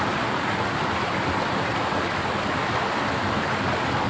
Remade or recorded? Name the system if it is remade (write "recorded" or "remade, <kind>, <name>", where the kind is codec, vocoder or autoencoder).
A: recorded